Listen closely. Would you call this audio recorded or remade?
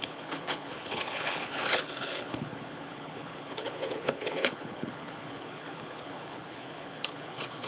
remade